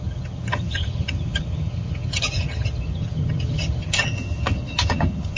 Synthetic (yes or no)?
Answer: yes